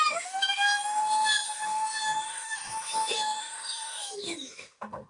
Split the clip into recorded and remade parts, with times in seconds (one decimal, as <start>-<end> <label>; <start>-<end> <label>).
0.0-5.1 remade